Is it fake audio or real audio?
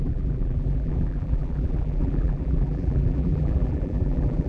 fake